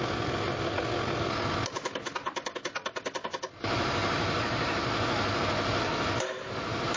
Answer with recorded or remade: recorded